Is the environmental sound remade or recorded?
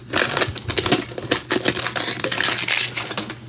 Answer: recorded